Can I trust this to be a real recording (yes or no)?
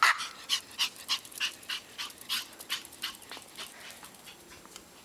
yes